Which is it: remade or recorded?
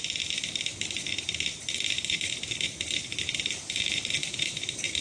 remade